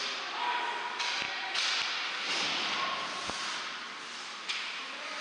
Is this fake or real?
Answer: real